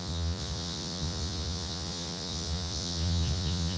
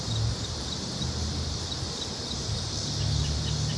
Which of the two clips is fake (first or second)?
first